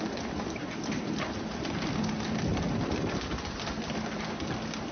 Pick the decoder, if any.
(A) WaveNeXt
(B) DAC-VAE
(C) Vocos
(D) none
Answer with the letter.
D